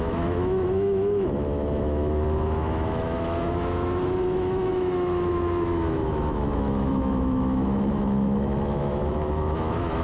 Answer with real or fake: fake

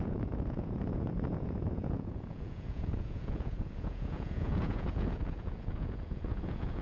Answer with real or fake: fake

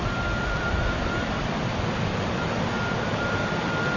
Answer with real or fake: real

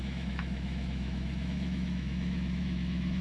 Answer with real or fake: fake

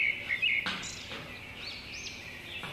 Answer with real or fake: real